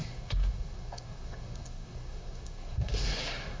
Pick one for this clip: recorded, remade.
remade